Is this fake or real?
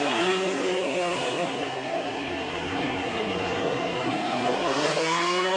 fake